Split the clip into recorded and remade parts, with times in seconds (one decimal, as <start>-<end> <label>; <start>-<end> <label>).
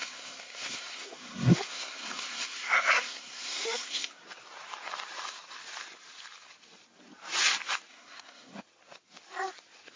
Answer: 0.0-4.2 remade; 4.2-7.9 recorded; 7.9-8.6 remade; 8.6-10.0 recorded